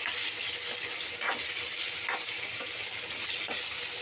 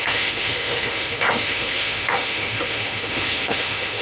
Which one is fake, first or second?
second